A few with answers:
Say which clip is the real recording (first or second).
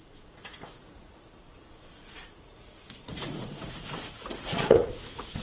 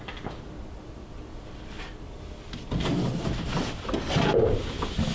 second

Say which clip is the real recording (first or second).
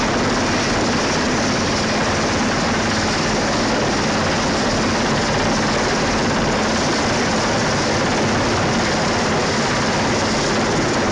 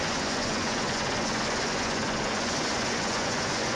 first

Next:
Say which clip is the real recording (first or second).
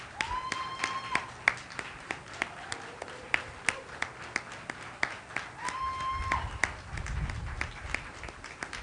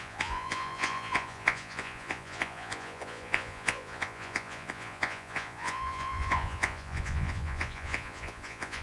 first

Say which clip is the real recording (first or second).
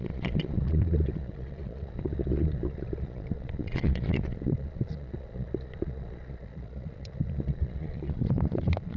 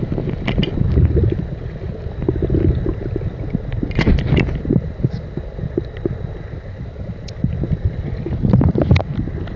second